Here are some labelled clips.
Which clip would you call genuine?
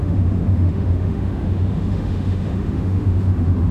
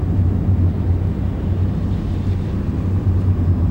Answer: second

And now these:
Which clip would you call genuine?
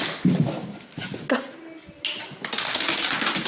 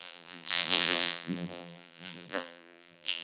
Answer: first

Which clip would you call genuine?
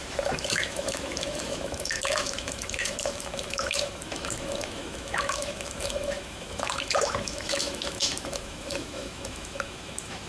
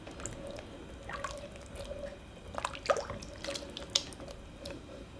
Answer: second